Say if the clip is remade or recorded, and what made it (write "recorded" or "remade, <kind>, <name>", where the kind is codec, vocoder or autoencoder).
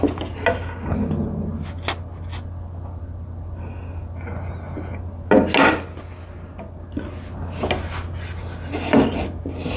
recorded